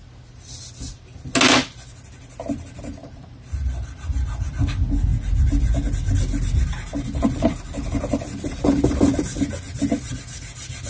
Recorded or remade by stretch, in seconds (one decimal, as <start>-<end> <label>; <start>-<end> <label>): 0.0-3.0 recorded; 3.0-4.5 remade; 4.5-10.9 recorded